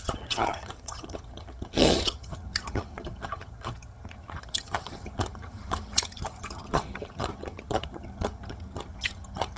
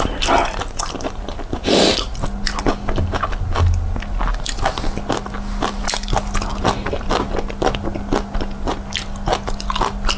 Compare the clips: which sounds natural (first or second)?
second